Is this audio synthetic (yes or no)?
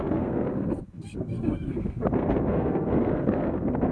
yes